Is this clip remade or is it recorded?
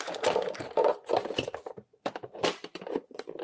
remade